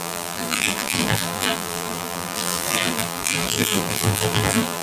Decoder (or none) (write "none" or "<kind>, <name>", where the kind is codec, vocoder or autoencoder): vocoder, BigVGAN v2